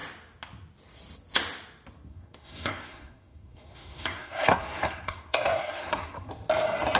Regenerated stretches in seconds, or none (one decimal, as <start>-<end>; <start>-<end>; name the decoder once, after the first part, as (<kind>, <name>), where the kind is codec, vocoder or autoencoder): 2.1-6.3 (codec, SNAC)

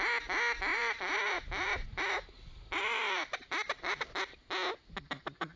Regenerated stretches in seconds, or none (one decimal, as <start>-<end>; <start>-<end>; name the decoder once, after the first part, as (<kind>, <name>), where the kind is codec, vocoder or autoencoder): 0.7-4.1 (vocoder, BigVGAN v2)

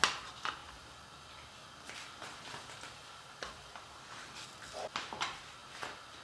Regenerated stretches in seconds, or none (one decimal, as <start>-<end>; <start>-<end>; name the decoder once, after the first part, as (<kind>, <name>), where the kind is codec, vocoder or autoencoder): none

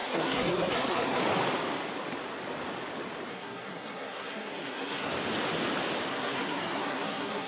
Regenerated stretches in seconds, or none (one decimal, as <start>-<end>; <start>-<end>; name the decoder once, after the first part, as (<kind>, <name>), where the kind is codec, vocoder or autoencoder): 0.0-1.2 (codec, SNAC); 3.3-5.1; 6.1-7.5

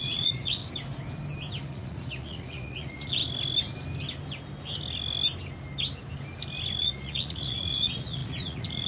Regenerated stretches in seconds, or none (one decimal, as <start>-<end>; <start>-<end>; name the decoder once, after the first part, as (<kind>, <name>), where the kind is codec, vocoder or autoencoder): 0.0-0.6 (vocoder, Vocos); 1.6-3.2; 6.8-8.9

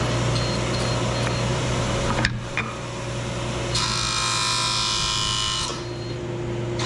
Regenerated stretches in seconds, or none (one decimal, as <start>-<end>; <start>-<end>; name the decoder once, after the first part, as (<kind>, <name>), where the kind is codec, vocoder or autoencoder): 1.5-2.6 (vocoder, BigVGAN v2); 5.7-6.3

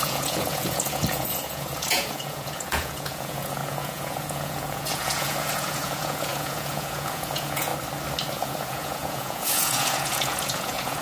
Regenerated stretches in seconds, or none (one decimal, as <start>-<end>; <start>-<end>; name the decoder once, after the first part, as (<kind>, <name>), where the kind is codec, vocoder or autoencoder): 0.0-7.7 (vocoder, Vocos); 8.3-11.0

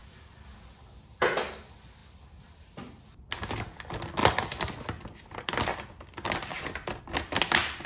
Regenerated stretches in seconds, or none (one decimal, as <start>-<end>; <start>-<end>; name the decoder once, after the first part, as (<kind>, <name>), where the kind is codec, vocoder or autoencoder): 4.2-7.0 (vocoder, BigVGAN v2)